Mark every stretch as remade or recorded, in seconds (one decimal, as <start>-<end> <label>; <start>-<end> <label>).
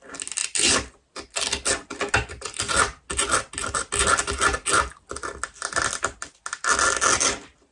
0.0-7.7 recorded